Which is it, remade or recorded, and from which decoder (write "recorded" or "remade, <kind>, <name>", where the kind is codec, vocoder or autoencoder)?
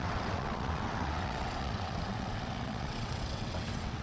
remade, vocoder, WaveNeXt